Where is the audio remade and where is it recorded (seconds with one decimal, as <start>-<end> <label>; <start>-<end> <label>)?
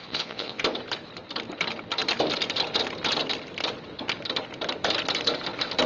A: 0.0-0.6 remade; 0.6-5.9 recorded